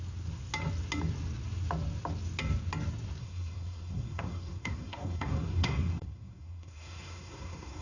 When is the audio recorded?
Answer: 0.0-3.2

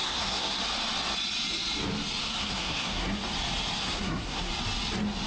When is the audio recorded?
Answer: 0.6-2.2; 3.2-3.8; 4.5-5.3

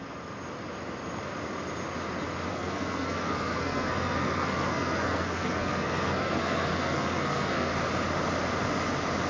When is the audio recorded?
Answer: 0.0-2.5; 7.7-9.3

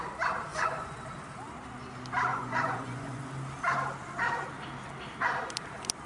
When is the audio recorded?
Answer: 0.0-0.5; 1.0-2.3; 3.3-6.1

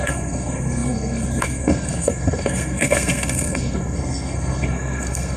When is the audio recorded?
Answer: none